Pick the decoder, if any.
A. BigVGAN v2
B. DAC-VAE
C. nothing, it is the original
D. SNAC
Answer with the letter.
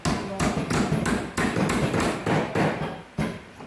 C